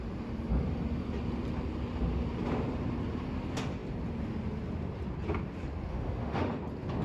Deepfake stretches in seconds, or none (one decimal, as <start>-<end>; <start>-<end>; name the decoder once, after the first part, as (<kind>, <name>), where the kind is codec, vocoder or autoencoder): 5.9-6.5 (autoencoder, DAC-VAE)